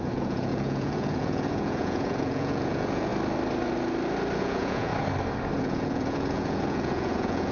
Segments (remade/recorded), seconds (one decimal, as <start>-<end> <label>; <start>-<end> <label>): 0.0-3.1 remade; 3.1-4.4 recorded; 4.4-4.9 remade; 4.9-5.6 recorded; 5.6-7.5 remade